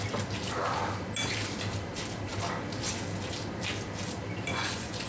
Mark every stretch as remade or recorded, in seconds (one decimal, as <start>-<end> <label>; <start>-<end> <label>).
0.0-4.5 recorded; 4.5-5.1 remade